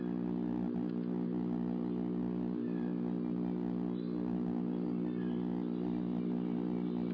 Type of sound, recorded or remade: recorded